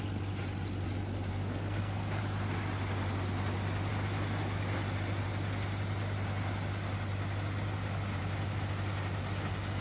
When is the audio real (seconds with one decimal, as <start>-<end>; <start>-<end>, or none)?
0.0-1.3; 2.2-9.8